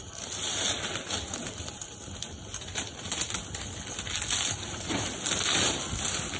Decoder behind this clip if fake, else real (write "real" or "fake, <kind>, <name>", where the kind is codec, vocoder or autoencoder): real